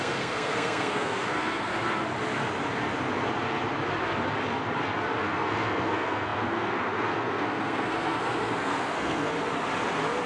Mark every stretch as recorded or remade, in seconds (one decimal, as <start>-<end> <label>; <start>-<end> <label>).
0.0-1.7 remade; 1.7-5.2 recorded; 5.2-9.3 remade; 9.3-10.3 recorded